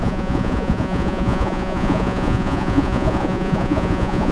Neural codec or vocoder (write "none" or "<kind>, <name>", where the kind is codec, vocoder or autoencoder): vocoder, Vocos